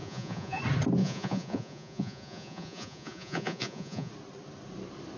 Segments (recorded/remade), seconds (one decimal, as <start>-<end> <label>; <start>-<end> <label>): 0.0-0.6 remade; 0.6-1.0 recorded; 1.0-4.1 remade; 4.1-5.2 recorded